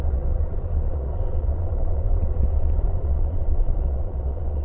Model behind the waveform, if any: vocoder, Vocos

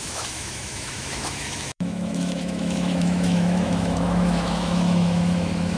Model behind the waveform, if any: autoencoder, DAC-VAE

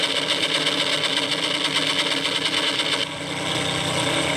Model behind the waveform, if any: none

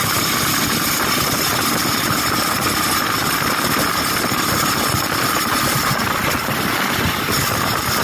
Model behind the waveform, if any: none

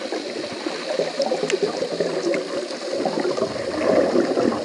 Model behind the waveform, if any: none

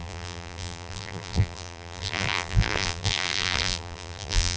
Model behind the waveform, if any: vocoder, BigVGAN v2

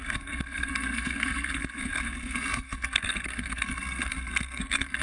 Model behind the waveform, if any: codec, SNAC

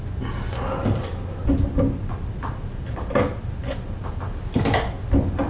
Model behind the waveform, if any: none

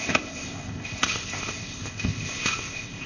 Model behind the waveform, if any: codec, ZipCodec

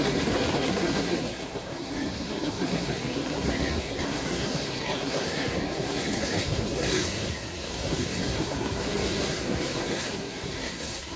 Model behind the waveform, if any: codec, SNAC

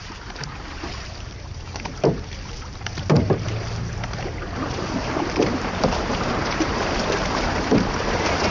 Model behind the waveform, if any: vocoder, BigVGAN v2